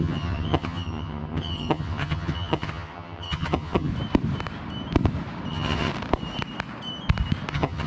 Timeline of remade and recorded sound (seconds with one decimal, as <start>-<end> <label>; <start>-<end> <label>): 0.0-3.9 remade; 3.9-5.5 recorded; 5.5-5.9 remade; 5.9-7.5 recorded; 7.5-7.9 remade